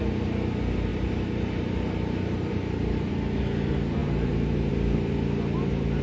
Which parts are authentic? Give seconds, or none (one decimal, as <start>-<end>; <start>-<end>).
0.0-0.9; 3.1-4.0; 4.7-6.0